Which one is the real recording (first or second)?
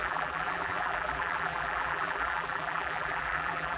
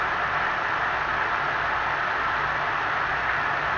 second